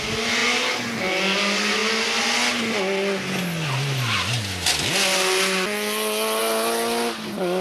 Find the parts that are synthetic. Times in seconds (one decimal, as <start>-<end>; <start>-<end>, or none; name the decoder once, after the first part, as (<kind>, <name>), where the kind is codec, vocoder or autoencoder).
none